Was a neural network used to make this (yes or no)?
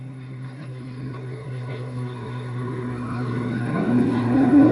yes